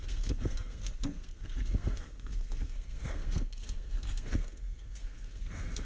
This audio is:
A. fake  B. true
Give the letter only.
A